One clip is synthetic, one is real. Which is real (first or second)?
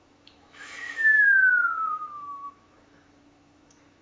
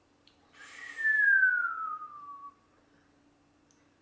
second